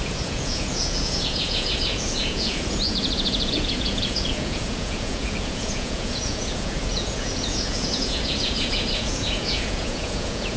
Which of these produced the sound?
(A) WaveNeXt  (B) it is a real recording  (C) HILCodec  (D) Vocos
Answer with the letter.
D